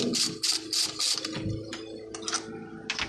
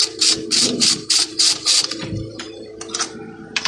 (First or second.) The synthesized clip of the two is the second